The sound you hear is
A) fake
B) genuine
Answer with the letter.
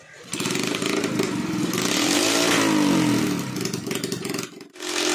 B